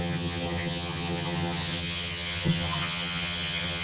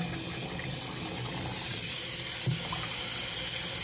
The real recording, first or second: second